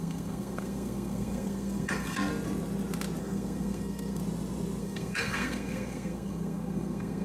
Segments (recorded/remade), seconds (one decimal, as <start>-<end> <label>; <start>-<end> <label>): 0.0-2.3 remade; 2.3-3.2 recorded; 3.2-4.2 remade; 4.2-4.8 recorded; 4.8-7.2 remade